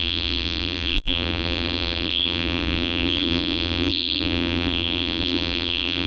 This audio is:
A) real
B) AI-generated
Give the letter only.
B